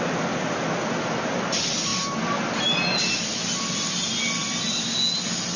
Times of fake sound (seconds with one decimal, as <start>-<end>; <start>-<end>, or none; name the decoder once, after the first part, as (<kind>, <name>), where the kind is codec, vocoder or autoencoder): none